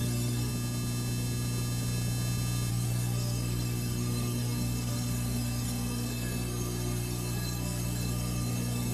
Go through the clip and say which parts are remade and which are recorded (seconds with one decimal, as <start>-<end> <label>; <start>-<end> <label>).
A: 0.0-0.5 remade; 0.5-2.7 recorded; 2.7-8.9 remade